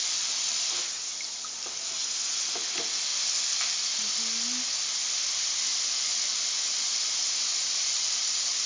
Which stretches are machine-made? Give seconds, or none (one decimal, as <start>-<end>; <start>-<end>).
7.5-8.7